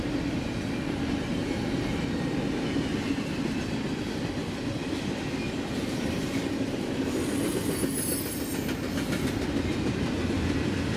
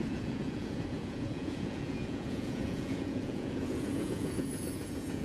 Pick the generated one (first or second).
second